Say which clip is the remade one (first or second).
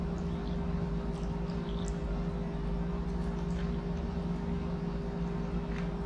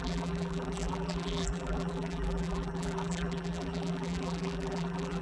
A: second